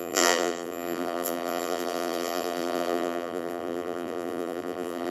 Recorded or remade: remade